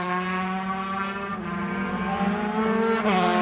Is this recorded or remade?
recorded